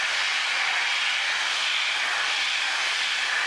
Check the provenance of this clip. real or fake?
real